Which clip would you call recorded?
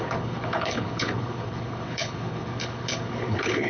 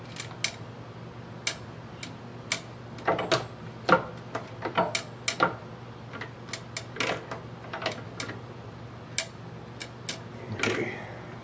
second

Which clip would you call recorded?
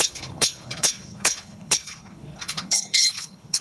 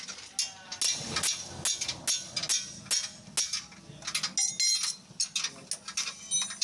second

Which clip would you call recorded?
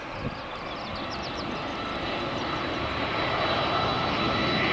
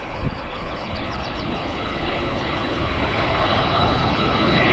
first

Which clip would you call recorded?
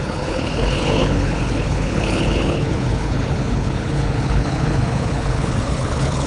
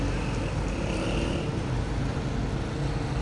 second